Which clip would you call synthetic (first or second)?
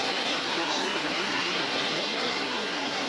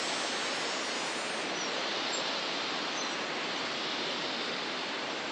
first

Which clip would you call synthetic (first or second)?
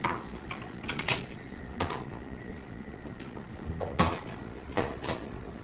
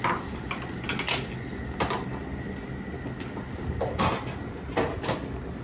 first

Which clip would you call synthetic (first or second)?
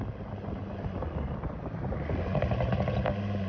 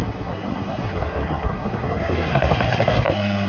second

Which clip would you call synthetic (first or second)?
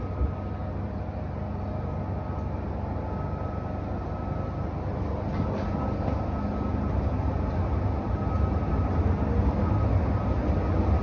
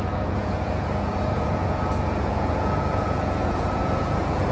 second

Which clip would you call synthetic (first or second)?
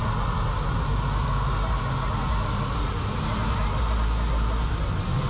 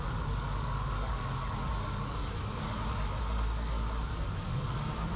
second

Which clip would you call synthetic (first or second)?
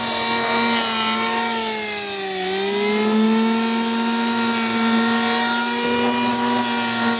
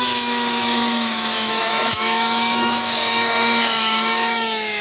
second